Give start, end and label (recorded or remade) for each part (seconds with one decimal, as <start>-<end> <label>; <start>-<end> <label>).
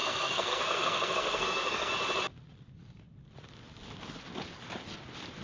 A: 0.0-1.9 remade; 1.9-5.4 recorded